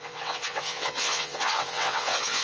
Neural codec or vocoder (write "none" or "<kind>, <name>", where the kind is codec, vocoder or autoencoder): vocoder, WaveNeXt